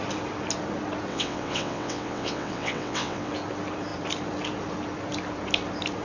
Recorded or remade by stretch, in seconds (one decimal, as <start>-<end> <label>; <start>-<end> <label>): 0.0-1.1 recorded; 1.1-3.3 remade; 3.3-6.0 recorded